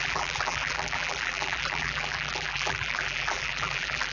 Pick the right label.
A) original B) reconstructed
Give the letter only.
B